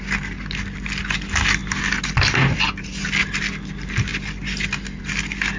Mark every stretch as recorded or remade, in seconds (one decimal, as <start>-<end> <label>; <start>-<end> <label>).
0.0-5.6 recorded